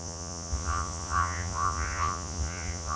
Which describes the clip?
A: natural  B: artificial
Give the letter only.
B